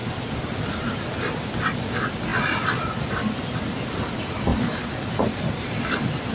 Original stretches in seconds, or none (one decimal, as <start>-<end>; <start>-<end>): 0.0-4.5; 5.8-6.3